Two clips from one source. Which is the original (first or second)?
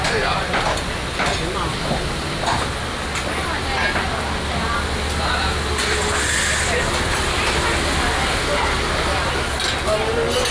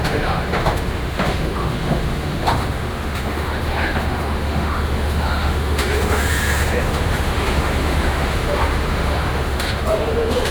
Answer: first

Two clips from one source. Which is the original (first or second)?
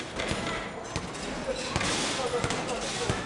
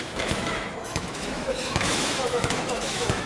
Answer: first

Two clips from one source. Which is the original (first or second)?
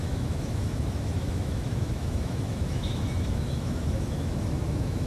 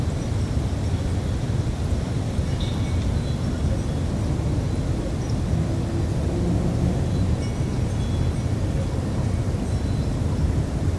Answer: second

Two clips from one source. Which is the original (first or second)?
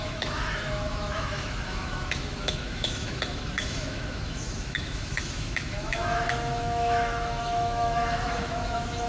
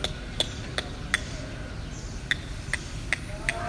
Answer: second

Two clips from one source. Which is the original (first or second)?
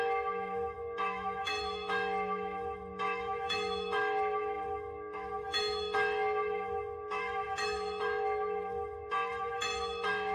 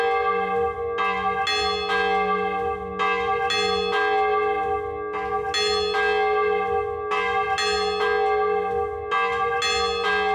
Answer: second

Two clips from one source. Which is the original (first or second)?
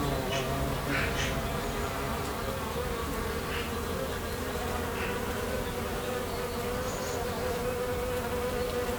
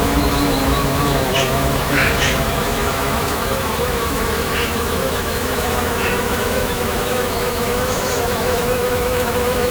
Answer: first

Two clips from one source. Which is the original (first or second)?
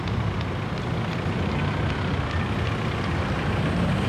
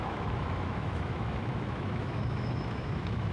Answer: first